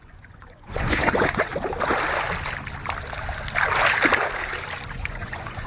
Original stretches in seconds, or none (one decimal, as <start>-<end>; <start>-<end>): 1.5-4.9